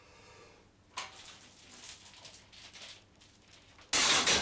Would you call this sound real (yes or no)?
yes